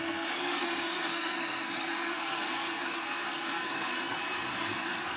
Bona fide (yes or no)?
no